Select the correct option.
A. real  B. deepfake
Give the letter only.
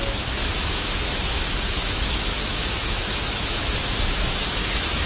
B